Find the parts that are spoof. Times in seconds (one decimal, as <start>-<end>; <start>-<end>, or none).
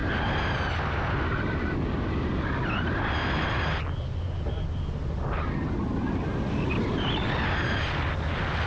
none